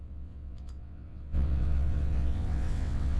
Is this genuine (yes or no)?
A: no